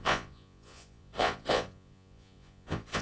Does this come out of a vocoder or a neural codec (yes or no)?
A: yes